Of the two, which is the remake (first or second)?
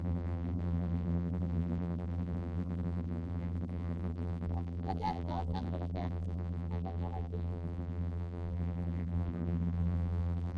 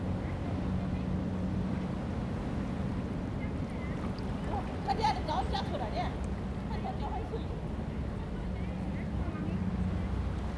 first